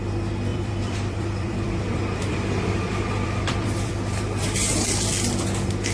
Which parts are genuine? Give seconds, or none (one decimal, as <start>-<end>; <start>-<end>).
0.0-0.5; 3.9-5.9